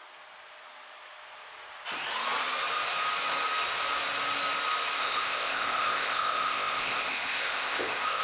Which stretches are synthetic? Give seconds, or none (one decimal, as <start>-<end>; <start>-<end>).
5.0-8.2